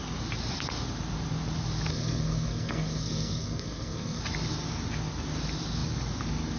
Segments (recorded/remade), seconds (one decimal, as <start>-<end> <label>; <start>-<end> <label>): 0.0-1.9 recorded; 1.9-4.2 remade; 4.2-6.6 recorded